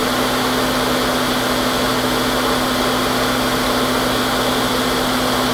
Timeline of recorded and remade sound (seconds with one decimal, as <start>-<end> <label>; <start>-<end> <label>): 0.0-5.5 recorded